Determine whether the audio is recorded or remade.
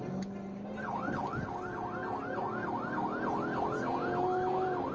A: recorded